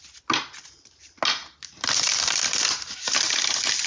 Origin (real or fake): real